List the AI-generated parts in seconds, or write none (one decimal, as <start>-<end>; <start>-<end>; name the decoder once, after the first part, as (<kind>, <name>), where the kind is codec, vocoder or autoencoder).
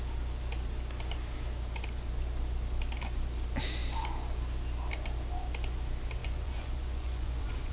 6.2-7.7 (vocoder, Vocos)